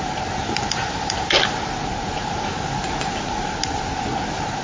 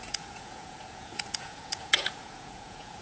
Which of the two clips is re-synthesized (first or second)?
second